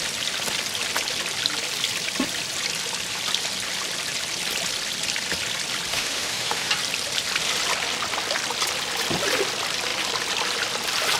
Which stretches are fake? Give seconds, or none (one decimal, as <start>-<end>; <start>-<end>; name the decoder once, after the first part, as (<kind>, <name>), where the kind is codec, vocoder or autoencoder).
5.9-6.7 (autoencoder, DAC-VAE)